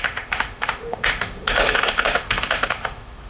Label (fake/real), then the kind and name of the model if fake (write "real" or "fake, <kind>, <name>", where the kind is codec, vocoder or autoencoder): fake, autoencoder, DAC-VAE